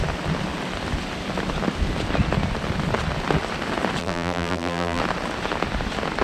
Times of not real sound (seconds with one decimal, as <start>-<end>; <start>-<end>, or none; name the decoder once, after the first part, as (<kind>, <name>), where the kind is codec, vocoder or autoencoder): 4.0-5.0 (vocoder, BigVGAN v2)